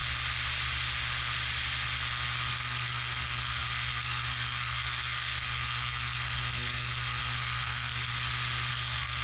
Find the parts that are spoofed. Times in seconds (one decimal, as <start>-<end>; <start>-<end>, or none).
2.5-8.1; 8.7-9.2